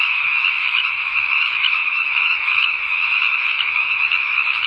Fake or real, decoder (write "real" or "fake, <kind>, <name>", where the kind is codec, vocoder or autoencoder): fake, autoencoder, DAC-VAE